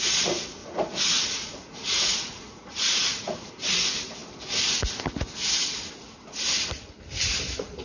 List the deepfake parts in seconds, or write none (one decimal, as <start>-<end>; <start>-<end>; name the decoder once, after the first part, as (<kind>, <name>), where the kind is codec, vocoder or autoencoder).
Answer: 0.6-3.5 (vocoder, Vocos)